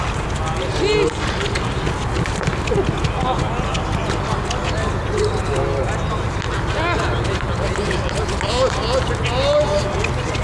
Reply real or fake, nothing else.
real